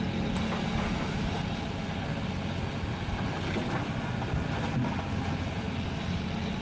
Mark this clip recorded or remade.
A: recorded